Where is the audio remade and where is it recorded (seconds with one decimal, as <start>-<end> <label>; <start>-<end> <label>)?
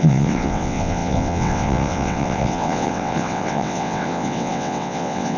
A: 0.0-5.4 remade